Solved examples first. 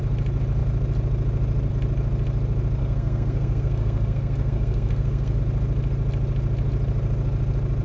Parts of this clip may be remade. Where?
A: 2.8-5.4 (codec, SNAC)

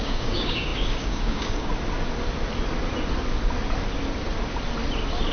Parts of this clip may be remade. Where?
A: 0.0-1.7 (codec, DAC)

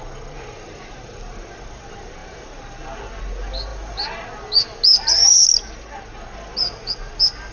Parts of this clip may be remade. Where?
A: none